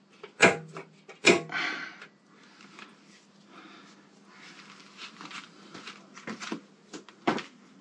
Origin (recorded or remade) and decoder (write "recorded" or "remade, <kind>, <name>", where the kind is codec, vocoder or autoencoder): recorded